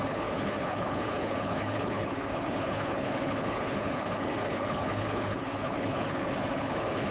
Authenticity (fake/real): fake